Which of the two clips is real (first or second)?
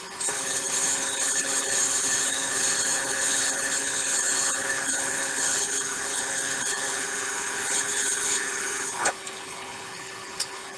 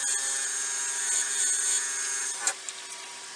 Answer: second